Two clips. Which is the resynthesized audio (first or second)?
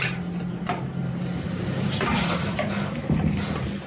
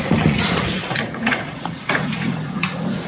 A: second